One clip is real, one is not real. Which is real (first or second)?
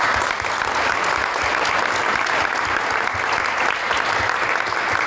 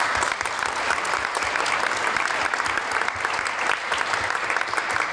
first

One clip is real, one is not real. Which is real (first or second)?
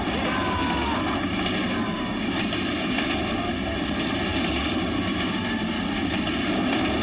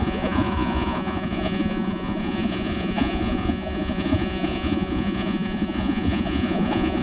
first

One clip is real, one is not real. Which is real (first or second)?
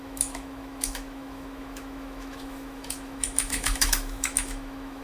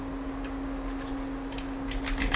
second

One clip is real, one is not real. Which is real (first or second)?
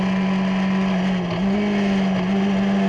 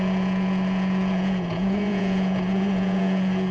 first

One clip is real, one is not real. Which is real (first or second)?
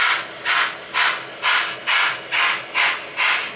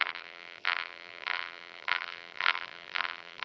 first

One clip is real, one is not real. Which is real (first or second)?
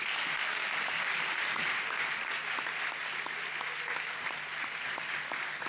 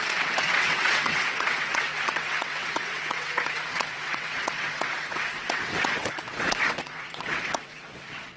first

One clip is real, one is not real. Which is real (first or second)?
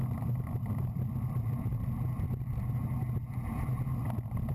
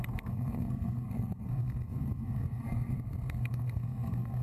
first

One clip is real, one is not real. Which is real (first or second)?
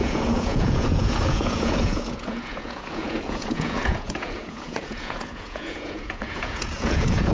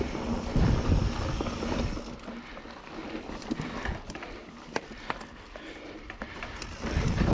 second